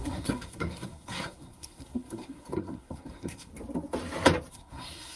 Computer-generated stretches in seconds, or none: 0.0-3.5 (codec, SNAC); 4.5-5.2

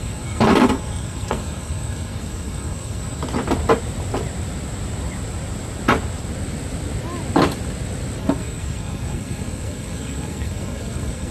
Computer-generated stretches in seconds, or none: 0.0-3.2 (codec, SNAC); 8.2-11.3

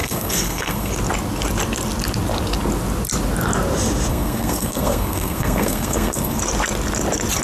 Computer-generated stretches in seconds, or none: 0.0-0.9 (codec, SNAC); 4.1-6.4

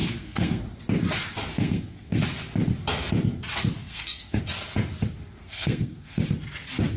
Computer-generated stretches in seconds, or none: 0.0-0.6 (codec, SNAC); 1.5-2.2; 3.8-4.4; 5.4-6.2

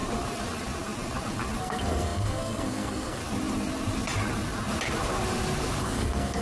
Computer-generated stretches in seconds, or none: 1.6-3.2 (codec, SNAC); 5.8-6.4

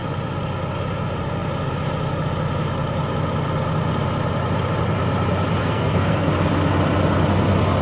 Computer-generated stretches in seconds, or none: 5.6-6.3 (codec, SNAC)

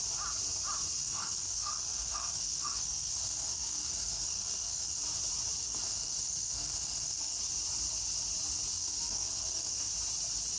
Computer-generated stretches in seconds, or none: 1.0-5.0 (codec, SNAC); 5.6-7.4; 8.7-9.9